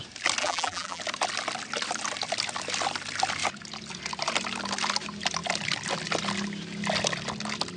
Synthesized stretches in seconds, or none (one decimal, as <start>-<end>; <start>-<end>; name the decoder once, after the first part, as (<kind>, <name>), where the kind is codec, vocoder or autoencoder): 0.4-1.0 (vocoder, BigVGAN v2)